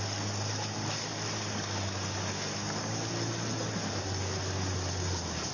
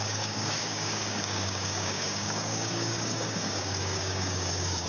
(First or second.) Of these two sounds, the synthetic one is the second